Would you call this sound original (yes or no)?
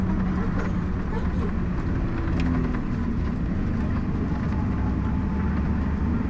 yes